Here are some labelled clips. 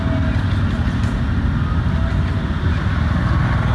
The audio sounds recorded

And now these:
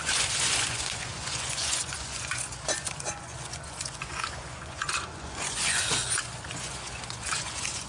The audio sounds remade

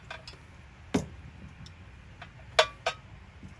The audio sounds recorded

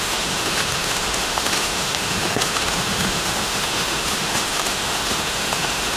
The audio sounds remade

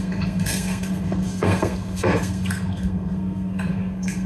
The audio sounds remade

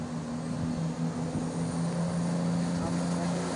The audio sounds recorded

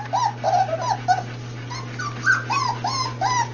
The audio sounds recorded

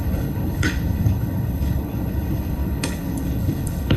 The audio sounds remade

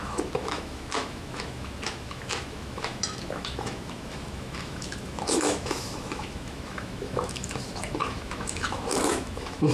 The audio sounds remade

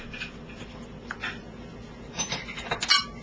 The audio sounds recorded